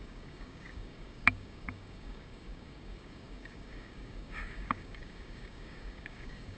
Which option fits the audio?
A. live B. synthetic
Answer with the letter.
B